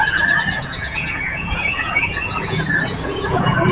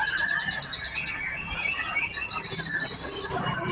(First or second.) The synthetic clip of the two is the first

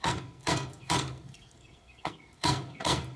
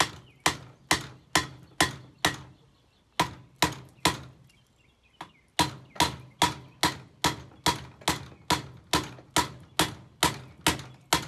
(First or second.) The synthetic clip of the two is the first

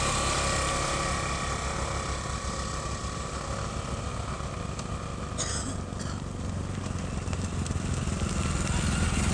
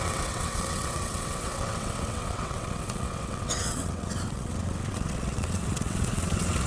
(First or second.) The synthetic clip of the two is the second